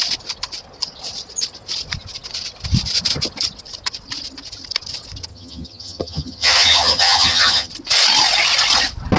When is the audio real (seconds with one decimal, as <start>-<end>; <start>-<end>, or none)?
0.0-5.3; 7.7-9.2